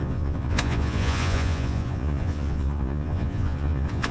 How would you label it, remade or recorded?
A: remade